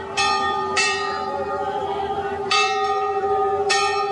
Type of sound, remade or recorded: remade